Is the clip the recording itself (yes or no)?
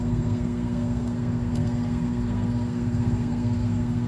no